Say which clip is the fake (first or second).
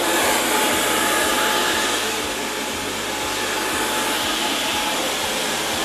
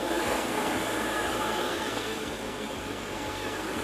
second